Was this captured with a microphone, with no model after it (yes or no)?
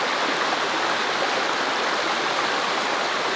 yes